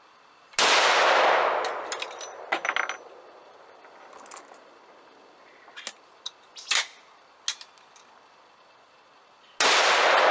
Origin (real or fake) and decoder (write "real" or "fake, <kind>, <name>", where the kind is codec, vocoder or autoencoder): real